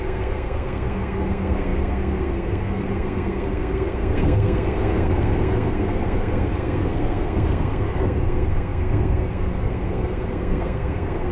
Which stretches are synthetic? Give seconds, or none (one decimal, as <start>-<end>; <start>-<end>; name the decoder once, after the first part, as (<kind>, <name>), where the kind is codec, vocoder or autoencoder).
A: 0.0-11.3 (codec, SNAC)